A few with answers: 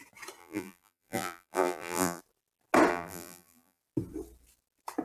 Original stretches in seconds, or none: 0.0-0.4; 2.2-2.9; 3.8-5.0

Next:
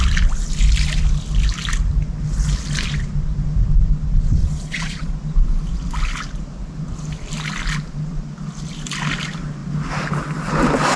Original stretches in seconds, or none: 0.0-4.4; 5.1-11.0

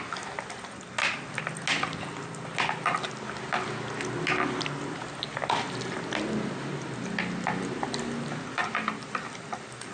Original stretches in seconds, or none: 0.0-9.9

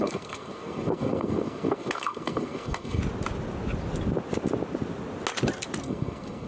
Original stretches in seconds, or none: 3.0-5.8

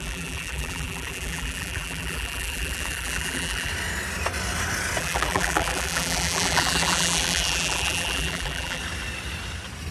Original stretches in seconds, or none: 3.7-5.0; 8.8-9.9

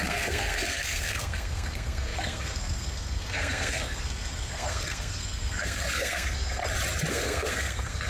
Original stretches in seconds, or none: 6.6-7.1

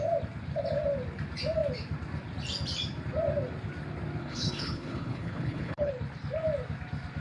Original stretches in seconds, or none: 0.0-4.2; 5.9-7.2